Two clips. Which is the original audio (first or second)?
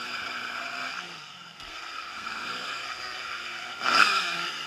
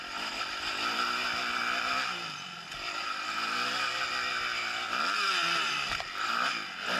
second